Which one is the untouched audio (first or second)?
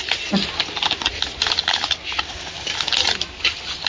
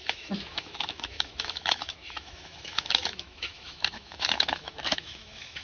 first